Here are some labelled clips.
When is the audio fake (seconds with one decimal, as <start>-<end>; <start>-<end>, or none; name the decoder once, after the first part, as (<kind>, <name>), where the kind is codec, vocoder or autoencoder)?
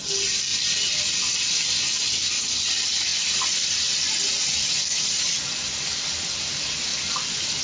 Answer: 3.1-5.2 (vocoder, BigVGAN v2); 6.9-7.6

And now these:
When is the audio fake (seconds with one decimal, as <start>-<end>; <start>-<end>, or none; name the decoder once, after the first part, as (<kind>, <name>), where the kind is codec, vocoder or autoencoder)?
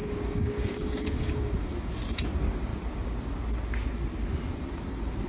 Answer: 0.0-1.7 (codec, DAC)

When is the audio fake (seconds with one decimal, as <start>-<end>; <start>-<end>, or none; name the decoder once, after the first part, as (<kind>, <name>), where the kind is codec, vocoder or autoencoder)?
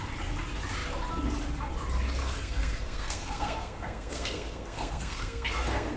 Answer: 2.2-6.0 (codec, SNAC)